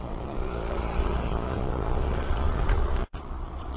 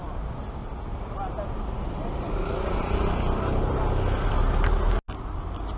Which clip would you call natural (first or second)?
second